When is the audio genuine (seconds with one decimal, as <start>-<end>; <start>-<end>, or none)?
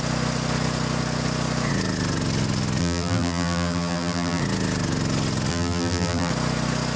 0.0-2.8; 4.4-5.5; 6.3-7.0